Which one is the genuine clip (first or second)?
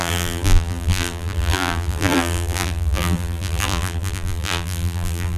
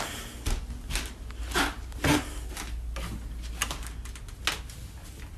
second